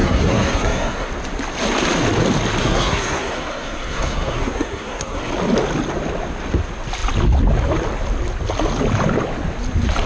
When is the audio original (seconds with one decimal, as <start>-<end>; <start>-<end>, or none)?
1.1-2.6; 5.3-10.1